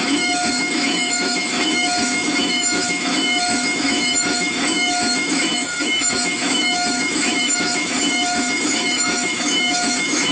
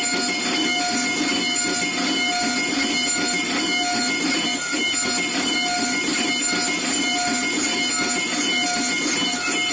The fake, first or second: first